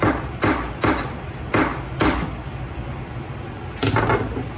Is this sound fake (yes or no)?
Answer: no